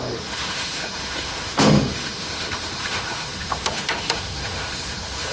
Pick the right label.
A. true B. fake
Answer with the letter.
B